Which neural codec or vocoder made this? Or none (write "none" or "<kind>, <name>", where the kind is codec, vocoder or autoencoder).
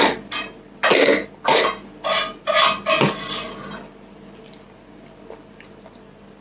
none